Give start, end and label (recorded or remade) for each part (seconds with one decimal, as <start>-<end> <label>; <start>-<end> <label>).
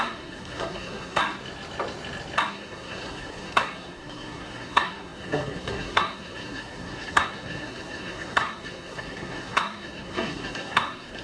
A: 0.0-1.2 remade; 1.2-2.5 recorded; 2.5-11.2 remade